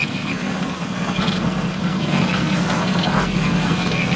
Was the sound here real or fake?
fake